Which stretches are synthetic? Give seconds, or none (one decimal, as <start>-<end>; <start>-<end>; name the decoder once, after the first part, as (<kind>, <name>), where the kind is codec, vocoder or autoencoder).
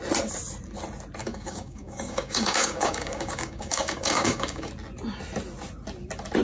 1.2-4.7 (codec, DAC)